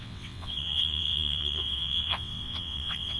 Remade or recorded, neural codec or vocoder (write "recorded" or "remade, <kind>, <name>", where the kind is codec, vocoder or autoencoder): remade, vocoder, WaveNeXt